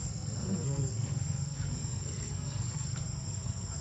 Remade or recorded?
remade